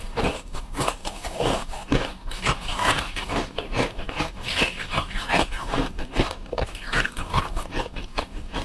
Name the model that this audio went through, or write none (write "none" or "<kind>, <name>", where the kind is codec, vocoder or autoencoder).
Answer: codec, DAC